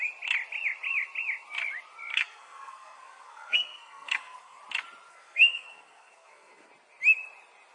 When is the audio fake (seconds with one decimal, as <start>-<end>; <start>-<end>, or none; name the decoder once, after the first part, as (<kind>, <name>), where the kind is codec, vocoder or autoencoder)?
2.1-4.6 (codec, SNAC); 5.1-6.7